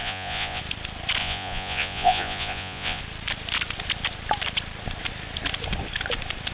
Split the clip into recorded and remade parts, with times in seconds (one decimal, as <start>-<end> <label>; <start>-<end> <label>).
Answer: 0.0-0.6 remade; 0.6-1.2 recorded; 1.2-3.0 remade; 3.0-6.5 recorded